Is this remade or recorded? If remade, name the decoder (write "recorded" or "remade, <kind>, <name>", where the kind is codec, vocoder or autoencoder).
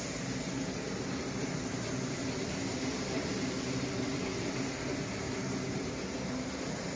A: recorded